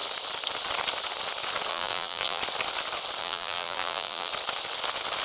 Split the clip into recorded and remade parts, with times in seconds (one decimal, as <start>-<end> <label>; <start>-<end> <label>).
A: 0.0-1.7 recorded; 1.7-2.4 remade; 2.4-3.2 recorded; 3.2-4.3 remade; 4.3-5.2 recorded